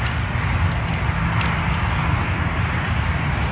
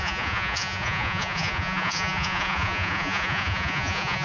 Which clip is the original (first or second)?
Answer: first